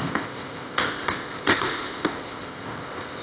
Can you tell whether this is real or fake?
fake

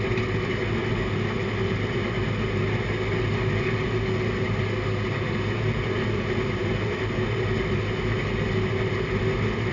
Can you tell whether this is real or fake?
real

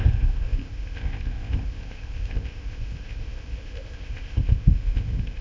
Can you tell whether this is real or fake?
fake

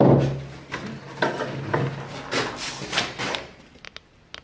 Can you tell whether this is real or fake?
real